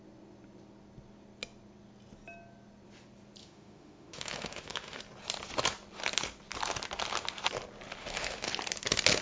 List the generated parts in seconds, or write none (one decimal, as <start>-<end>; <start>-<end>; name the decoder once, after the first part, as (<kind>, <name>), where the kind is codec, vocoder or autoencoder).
3.4-5.0 (autoencoder, DAC-VAE); 8.0-8.5